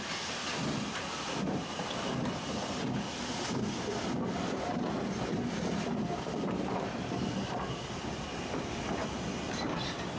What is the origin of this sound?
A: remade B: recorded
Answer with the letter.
B